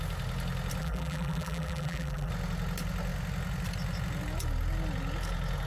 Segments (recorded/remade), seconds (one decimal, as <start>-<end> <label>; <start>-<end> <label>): 0.0-0.8 recorded; 0.8-2.3 remade; 2.3-5.7 recorded

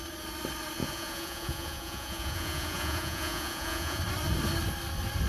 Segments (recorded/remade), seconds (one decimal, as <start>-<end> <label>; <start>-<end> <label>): 0.0-0.8 recorded; 0.8-4.0 remade; 4.0-5.3 recorded

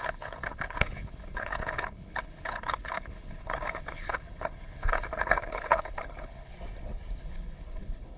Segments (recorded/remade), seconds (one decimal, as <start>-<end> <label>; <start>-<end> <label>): 0.0-6.5 remade; 6.5-7.2 recorded; 7.2-8.2 remade

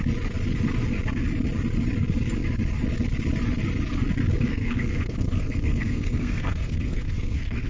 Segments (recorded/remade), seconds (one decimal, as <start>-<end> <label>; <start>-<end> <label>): 0.0-4.5 recorded; 4.5-7.7 remade

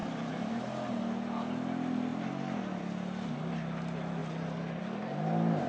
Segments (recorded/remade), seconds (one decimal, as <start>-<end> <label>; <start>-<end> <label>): 0.0-5.7 recorded

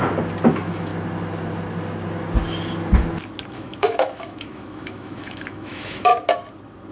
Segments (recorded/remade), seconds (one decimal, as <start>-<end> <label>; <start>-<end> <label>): 0.0-0.5 recorded; 0.5-0.9 remade; 0.9-3.5 recorded; 3.5-6.1 remade; 6.1-6.9 recorded

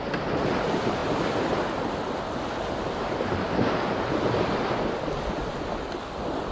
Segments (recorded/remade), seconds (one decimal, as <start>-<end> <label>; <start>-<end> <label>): 0.0-6.5 recorded